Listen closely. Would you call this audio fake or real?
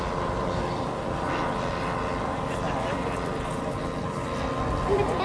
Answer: real